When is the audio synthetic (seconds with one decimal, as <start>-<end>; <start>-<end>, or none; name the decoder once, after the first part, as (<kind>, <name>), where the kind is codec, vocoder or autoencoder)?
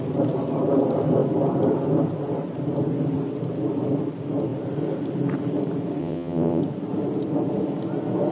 6.0-6.6 (vocoder, WaveNeXt)